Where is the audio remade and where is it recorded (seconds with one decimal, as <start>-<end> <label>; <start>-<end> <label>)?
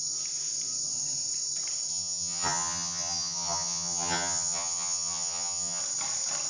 0.0-1.9 recorded; 1.9-5.8 remade; 5.8-6.5 recorded